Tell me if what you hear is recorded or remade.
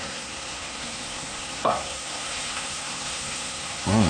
remade